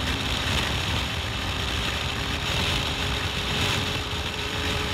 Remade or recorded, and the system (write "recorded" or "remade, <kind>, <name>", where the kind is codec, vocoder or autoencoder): remade, vocoder, BigVGAN v2